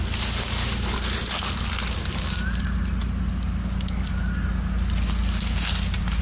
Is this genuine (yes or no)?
yes